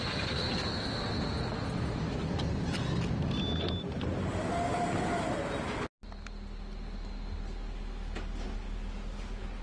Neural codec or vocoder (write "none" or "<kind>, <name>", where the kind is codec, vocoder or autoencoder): none